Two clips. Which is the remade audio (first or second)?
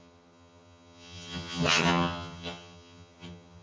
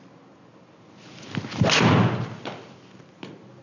first